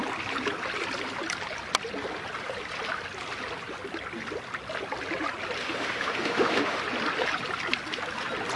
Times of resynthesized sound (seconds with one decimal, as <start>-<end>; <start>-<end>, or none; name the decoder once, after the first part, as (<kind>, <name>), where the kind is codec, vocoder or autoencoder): 5.6-6.8 (autoencoder, DAC-VAE)